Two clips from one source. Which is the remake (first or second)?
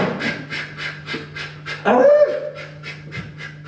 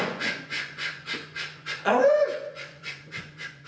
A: second